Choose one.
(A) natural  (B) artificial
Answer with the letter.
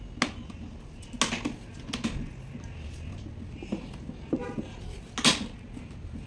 A